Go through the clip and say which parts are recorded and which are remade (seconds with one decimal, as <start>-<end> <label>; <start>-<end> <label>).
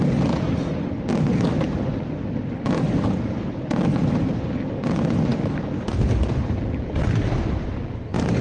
0.0-8.4 recorded